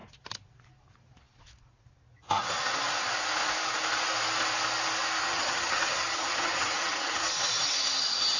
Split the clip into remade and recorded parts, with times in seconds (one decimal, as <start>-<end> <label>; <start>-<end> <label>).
0.0-5.2 recorded; 5.2-7.3 remade; 7.3-8.4 recorded